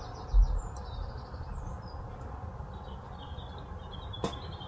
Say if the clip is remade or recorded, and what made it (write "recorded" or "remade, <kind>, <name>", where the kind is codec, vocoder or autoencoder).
recorded